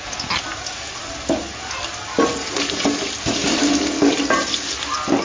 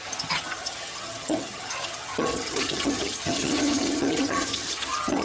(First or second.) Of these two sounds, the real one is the first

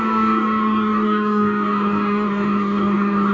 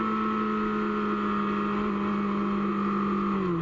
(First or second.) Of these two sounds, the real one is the second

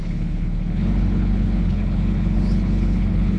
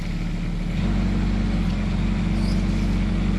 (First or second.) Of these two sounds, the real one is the second